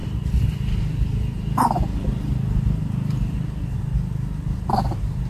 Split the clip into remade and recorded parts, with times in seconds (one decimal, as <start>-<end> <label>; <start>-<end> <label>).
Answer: 0.0-5.3 recorded